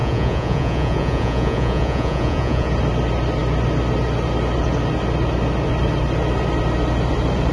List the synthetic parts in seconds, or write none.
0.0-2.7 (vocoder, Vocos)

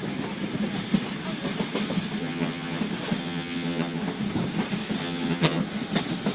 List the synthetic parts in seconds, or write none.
2.2-2.8 (vocoder, HiFi-GAN); 3.2-4.0; 5.0-5.6

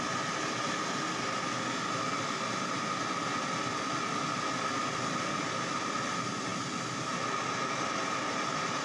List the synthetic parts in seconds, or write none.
none

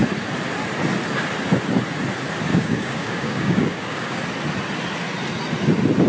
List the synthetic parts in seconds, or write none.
2.5-4.2 (codec, DAC)

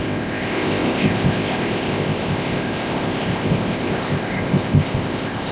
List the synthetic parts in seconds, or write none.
0.0-5.5 (codec, ZipCodec)

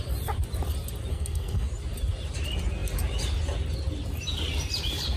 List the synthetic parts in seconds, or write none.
1.1-1.7 (codec, SNAC)

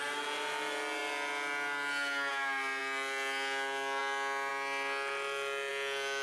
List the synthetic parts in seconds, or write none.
none